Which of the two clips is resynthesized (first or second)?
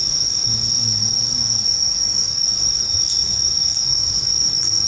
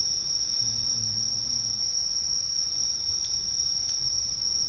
first